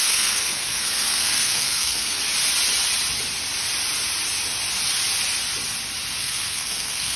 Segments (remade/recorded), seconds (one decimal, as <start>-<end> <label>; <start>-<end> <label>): 0.0-2.2 remade; 2.2-6.2 recorded; 6.2-7.2 remade